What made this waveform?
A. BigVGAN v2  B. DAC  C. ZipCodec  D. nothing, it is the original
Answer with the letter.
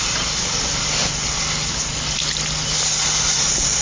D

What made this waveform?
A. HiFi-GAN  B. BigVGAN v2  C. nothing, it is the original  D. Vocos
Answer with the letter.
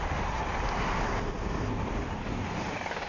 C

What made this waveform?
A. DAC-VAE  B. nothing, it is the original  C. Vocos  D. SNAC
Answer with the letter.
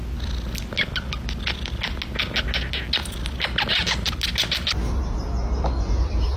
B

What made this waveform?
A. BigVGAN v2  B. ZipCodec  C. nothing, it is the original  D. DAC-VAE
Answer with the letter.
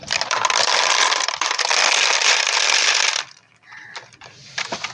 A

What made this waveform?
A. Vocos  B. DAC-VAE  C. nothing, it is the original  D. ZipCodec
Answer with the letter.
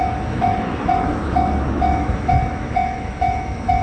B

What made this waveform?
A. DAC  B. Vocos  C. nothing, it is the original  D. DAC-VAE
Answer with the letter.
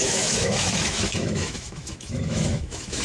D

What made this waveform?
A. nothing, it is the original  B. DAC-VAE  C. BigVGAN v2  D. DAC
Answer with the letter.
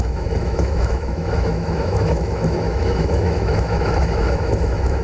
B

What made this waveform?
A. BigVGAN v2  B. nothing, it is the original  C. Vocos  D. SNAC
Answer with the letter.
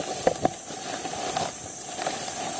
B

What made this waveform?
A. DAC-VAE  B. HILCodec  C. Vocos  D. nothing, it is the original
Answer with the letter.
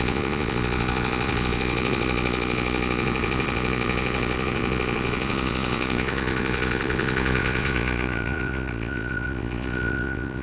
C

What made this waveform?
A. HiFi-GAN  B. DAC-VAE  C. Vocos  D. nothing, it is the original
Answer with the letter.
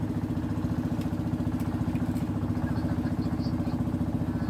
D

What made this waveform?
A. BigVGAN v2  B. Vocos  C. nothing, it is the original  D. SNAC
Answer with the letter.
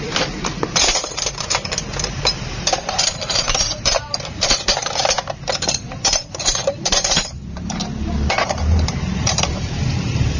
A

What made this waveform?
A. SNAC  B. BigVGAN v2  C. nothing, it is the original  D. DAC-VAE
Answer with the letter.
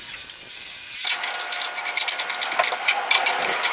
C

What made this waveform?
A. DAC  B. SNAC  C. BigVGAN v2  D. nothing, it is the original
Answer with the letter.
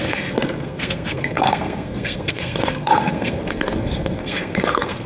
B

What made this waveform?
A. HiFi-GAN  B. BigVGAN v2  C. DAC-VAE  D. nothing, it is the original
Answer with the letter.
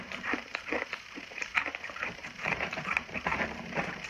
B